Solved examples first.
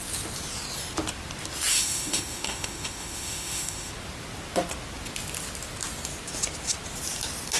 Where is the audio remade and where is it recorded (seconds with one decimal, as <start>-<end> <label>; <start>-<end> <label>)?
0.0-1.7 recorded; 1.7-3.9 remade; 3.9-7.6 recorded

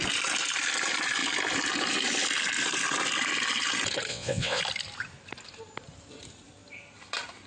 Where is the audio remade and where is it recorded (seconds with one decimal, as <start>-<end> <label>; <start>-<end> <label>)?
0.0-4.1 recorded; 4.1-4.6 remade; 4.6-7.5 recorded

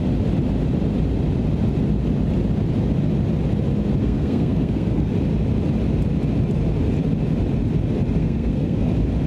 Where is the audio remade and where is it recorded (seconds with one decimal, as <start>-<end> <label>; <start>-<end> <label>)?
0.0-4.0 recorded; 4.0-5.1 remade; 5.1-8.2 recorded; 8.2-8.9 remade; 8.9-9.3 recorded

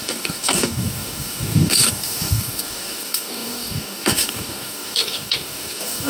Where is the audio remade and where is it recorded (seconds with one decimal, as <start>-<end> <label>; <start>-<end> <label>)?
0.0-6.1 remade

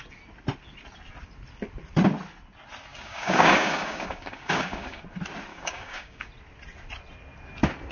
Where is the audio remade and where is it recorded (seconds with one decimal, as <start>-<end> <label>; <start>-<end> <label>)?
0.0-2.9 recorded; 2.9-5.0 remade; 5.0-5.5 recorded; 5.5-6.3 remade; 6.3-7.9 recorded

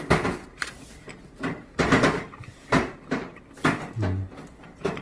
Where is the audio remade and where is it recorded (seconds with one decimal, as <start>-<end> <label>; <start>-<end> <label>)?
0.0-0.4 recorded; 0.4-3.4 remade; 3.4-5.0 recorded

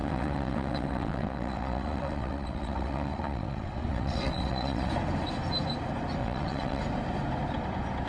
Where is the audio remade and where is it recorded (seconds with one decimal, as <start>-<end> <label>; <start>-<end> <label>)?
0.0-4.9 remade; 4.9-6.2 recorded; 6.2-6.8 remade; 6.8-8.1 recorded